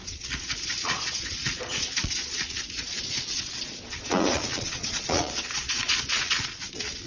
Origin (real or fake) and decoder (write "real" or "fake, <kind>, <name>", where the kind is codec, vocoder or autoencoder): fake, vocoder, Vocos